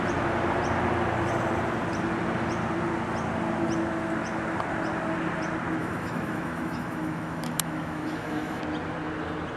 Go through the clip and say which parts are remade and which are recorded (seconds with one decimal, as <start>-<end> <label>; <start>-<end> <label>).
0.0-5.8 recorded; 5.8-8.6 remade; 8.6-9.6 recorded